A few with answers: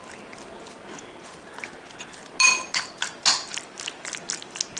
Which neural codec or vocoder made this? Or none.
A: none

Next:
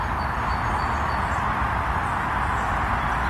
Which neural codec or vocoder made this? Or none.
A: none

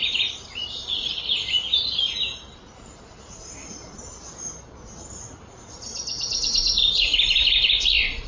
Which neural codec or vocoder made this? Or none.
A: none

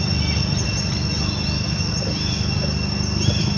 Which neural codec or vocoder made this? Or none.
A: none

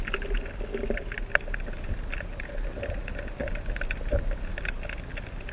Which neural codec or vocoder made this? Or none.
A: none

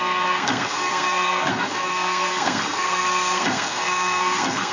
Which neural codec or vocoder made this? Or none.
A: codec, SNAC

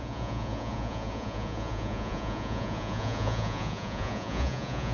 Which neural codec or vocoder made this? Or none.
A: vocoder, Vocos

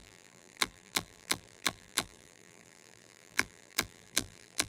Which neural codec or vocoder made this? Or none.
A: vocoder, BigVGAN v2